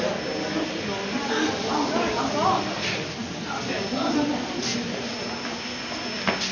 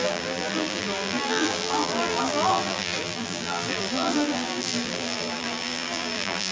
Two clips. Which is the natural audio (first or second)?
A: first